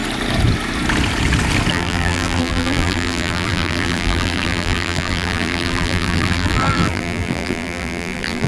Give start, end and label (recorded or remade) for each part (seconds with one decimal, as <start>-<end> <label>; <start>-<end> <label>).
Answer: 0.0-1.7 recorded; 1.7-8.5 remade